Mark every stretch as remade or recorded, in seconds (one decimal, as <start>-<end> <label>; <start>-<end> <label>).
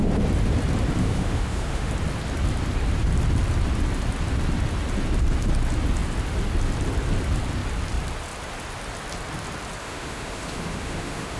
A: 0.0-1.0 recorded; 1.0-1.9 remade; 1.9-9.8 recorded; 9.8-11.4 remade